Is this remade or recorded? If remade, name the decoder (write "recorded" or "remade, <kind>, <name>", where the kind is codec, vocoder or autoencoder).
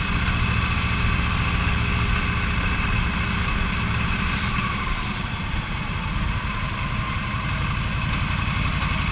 recorded